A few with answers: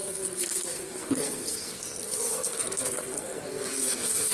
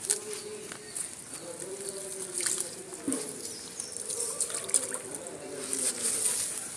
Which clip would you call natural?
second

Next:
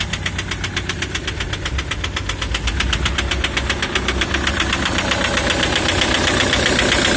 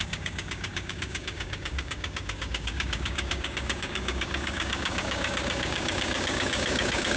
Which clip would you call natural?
first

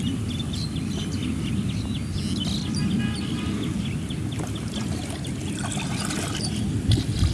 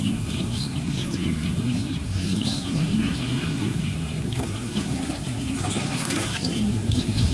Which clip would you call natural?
first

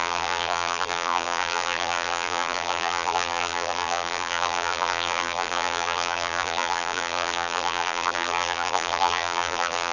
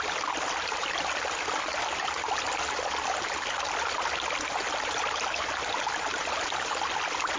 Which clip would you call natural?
second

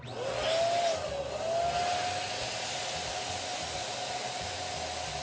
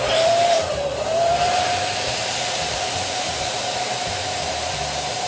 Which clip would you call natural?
first